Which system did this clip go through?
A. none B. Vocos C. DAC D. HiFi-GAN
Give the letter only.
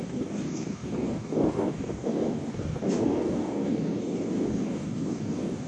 C